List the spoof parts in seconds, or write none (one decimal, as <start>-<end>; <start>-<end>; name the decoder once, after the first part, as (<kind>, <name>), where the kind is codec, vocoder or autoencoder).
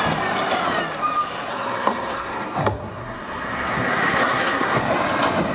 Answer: 1.5-4.8 (codec, SNAC)